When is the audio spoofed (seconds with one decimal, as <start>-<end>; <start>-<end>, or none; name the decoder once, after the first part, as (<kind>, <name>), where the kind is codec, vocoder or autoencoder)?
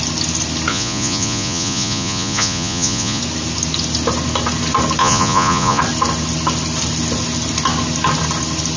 0.7-3.2 (vocoder, Vocos); 5.0-5.8